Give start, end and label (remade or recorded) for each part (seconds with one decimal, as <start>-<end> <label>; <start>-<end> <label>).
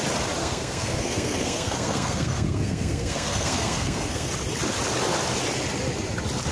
0.0-0.4 recorded; 0.4-4.3 remade; 4.3-6.5 recorded